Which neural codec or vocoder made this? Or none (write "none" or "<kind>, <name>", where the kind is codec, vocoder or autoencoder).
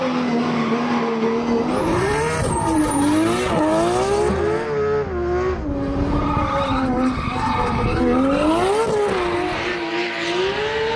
none